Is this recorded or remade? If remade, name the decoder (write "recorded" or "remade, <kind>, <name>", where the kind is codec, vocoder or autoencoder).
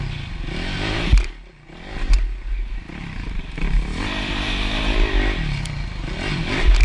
recorded